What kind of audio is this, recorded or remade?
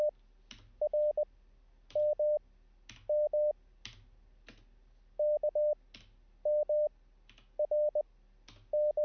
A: recorded